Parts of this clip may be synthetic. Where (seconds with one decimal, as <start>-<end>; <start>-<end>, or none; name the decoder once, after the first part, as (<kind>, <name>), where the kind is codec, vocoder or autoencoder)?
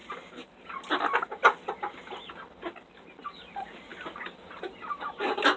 3.4-3.9 (vocoder, BigVGAN v2); 4.5-5.6